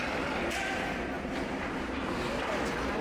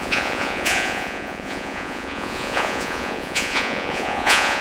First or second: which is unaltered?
first